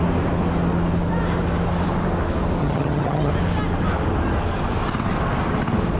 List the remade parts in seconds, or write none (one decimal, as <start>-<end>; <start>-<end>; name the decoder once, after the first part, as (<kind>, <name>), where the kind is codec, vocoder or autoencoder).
2.6-3.3 (vocoder, HiFi-GAN)